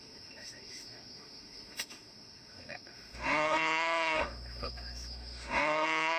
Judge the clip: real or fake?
fake